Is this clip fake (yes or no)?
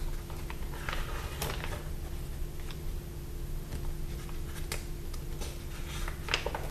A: no